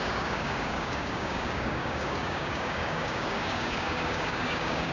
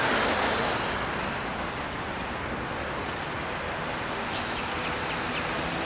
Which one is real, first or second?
second